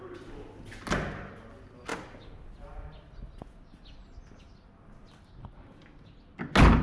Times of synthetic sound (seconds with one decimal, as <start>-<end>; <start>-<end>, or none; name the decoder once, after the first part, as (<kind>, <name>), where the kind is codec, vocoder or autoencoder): none